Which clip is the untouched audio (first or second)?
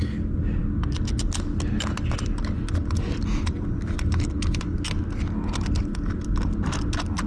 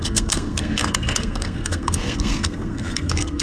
first